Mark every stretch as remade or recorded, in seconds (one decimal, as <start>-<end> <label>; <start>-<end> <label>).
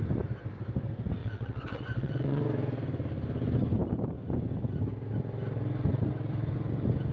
0.0-1.2 recorded; 1.2-2.4 remade; 2.4-7.1 recorded